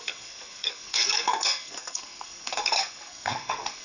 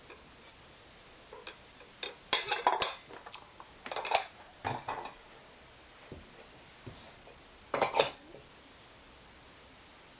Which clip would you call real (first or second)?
second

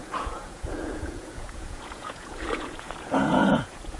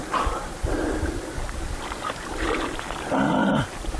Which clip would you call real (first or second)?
second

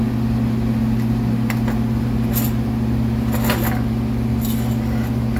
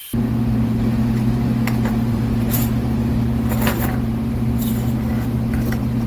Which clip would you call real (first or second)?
first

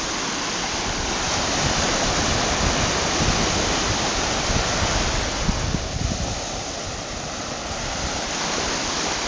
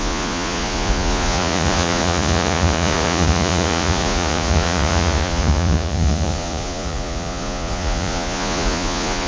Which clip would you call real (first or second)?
first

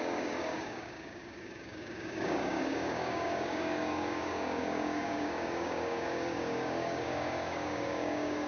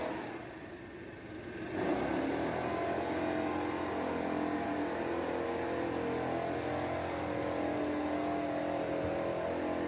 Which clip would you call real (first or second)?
second